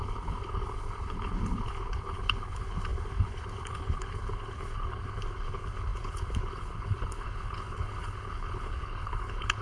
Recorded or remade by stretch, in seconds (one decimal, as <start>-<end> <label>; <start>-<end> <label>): 0.0-9.6 remade

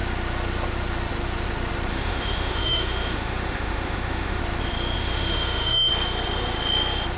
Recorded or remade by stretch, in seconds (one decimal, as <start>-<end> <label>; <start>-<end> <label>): 0.0-1.9 recorded; 1.9-4.4 remade; 4.4-5.0 recorded; 5.0-5.9 remade; 5.9-7.2 recorded

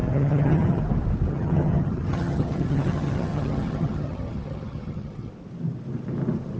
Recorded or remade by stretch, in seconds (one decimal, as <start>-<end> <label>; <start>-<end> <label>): 0.0-0.8 remade; 0.8-1.3 recorded; 1.3-5.3 remade; 5.3-6.6 recorded

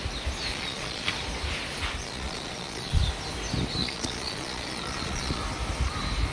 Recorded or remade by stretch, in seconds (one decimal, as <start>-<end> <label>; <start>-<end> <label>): 0.0-0.5 recorded; 0.5-1.1 remade; 1.1-2.0 recorded; 2.0-3.0 remade; 3.0-3.8 recorded; 3.8-5.4 remade; 5.4-6.3 recorded

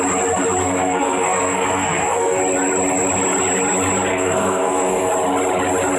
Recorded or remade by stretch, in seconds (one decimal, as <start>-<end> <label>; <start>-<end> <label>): 0.0-0.6 recorded; 0.6-2.4 remade; 2.4-4.1 recorded; 4.1-5.1 remade; 5.1-6.0 recorded

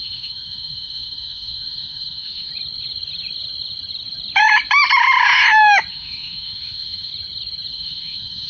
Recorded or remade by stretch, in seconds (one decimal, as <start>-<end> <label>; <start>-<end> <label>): 0.0-2.5 remade; 2.5-5.9 recorded; 5.9-7.1 remade; 7.1-7.7 recorded; 7.7-8.5 remade

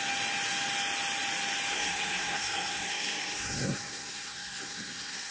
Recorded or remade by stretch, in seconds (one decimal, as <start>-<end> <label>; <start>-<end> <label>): 0.0-1.7 recorded; 1.7-5.3 remade